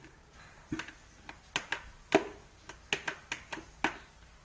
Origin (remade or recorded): recorded